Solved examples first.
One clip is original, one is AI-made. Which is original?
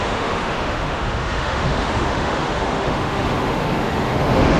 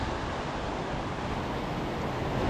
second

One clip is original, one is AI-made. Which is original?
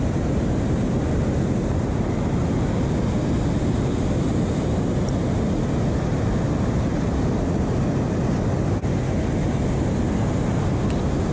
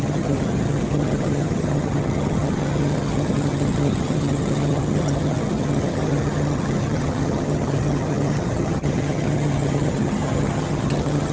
first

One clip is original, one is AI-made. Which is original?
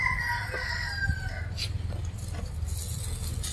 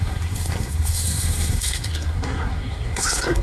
first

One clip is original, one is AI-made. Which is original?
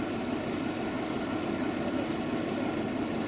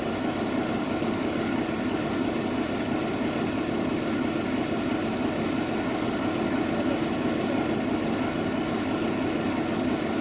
second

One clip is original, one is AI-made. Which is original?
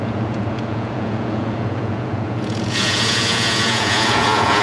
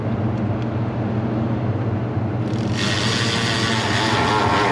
second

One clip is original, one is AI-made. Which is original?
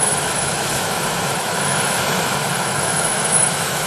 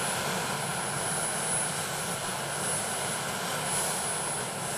second